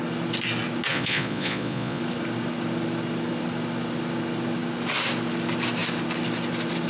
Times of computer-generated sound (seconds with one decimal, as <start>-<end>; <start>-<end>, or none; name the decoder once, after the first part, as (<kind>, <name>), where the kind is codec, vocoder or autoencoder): 0.9-2.0 (vocoder, Vocos)